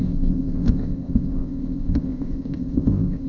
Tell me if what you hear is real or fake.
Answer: fake